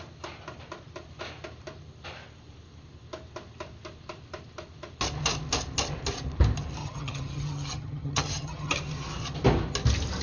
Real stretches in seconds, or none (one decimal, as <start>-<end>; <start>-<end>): 0.0-6.8; 8.7-10.2